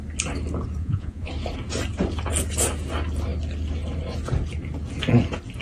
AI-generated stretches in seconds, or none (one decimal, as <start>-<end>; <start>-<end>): 0.8-1.3